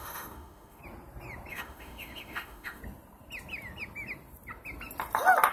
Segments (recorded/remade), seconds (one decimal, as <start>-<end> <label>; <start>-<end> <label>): 0.0-0.8 remade; 0.8-1.5 recorded; 1.5-2.8 remade; 2.8-5.5 recorded